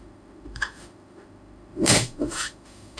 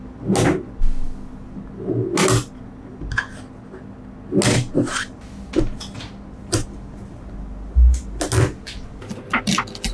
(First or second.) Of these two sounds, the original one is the second